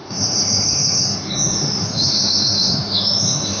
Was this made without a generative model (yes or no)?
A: no